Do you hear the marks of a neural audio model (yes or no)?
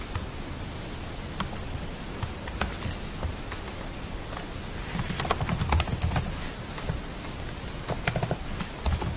no